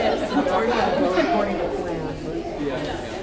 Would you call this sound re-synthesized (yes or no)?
no